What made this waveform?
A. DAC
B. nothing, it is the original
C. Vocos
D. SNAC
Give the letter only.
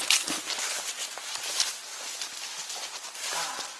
B